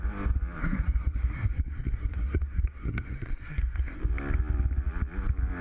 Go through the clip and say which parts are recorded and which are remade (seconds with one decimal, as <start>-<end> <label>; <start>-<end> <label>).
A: 0.0-0.6 recorded; 0.6-4.0 remade; 4.0-5.6 recorded